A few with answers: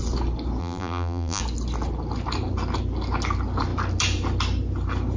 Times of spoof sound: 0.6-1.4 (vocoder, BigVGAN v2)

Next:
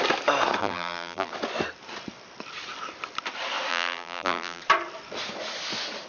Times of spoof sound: 0.6-1.3 (vocoder, BigVGAN v2); 3.7-4.6

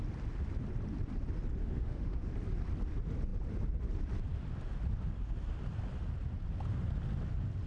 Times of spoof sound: 1.6-2.3 (autoencoder, DAC-VAE)

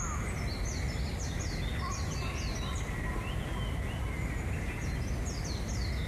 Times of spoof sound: none

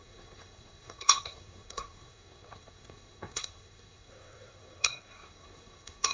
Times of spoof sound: 0.0-6.1 (codec, SNAC)

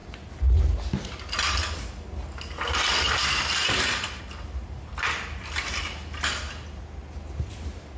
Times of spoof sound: none

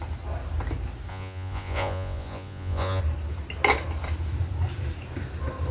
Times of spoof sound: 1.1-3.0 (vocoder, Vocos)